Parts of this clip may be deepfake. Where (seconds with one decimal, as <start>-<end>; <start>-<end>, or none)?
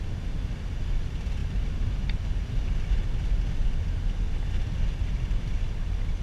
none